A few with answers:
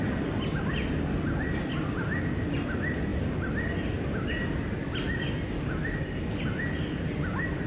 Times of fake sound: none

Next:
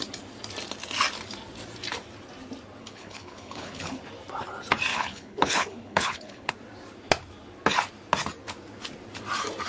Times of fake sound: 2.8-4.0 (codec, HILCodec); 4.9-6.5

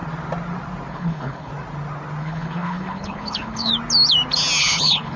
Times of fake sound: 0.9-1.5 (codec, HILCodec); 2.2-3.7; 4.6-5.2

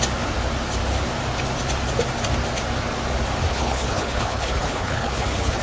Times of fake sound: 3.5-5.6 (codec, HILCodec)

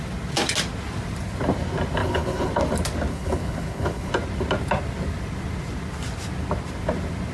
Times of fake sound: 2.0-2.5 (codec, HILCodec); 3.1-4.1

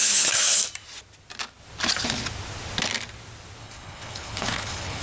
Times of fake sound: 0.0-0.6 (codec, HILCodec); 3.6-5.0

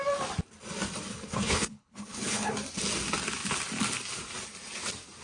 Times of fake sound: 1.1-2.5 (codec, HILCodec)

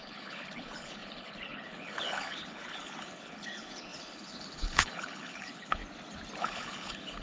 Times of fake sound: 0.0-5.8 (codec, HILCodec); 6.4-7.2